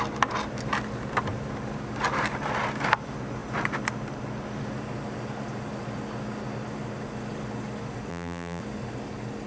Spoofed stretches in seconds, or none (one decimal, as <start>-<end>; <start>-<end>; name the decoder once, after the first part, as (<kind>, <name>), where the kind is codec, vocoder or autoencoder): 8.1-8.6 (vocoder, BigVGAN v2)